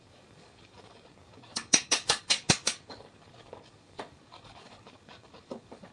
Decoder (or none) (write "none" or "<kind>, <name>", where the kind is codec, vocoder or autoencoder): codec, DAC